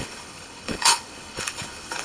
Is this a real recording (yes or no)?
no